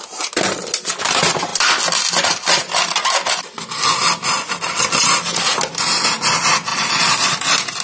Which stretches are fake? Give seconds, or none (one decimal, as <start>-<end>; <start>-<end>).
6.7-7.8